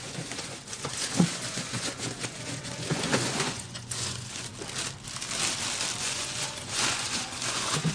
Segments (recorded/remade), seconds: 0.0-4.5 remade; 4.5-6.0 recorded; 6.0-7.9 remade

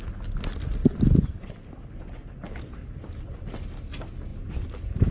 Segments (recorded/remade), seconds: 0.0-0.8 recorded; 0.8-1.5 remade; 1.5-2.8 recorded; 2.8-3.8 remade; 3.8-5.1 recorded

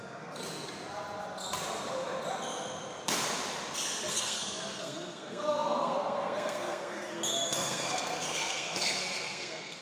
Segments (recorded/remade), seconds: 0.0-0.4 remade; 0.4-4.1 recorded; 4.1-9.8 remade